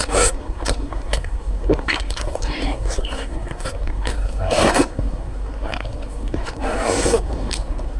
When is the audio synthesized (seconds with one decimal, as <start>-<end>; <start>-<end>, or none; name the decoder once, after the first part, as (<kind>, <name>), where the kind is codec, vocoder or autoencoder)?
0.0-8.0 (codec, SNAC)